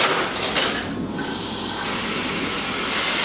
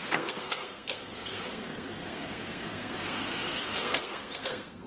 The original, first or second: first